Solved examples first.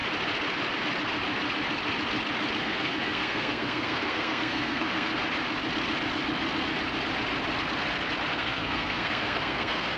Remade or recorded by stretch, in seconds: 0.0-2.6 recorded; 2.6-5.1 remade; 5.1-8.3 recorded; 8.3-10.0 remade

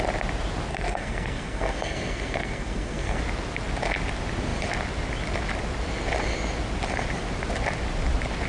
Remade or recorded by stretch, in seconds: 0.0-0.7 recorded; 0.7-3.2 remade; 3.2-8.5 recorded

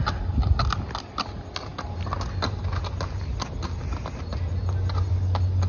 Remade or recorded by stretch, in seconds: 0.0-5.7 recorded